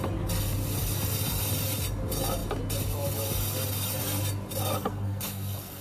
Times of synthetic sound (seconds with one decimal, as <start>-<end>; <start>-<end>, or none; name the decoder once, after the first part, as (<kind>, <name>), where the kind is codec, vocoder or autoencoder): 4.6-5.8 (codec, SNAC)